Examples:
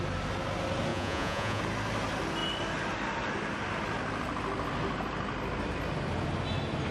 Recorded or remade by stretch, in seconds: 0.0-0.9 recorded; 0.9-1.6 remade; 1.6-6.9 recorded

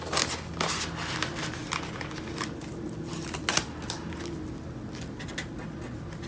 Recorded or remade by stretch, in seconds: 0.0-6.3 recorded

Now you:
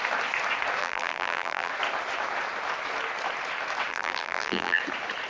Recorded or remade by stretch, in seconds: 0.0-0.8 recorded; 0.8-1.7 remade; 1.7-3.9 recorded; 3.9-4.8 remade; 4.8-5.3 recorded